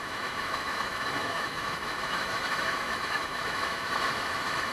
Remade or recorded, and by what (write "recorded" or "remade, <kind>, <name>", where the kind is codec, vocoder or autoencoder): remade, autoencoder, DAC-VAE